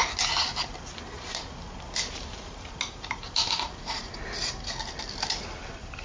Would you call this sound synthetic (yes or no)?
no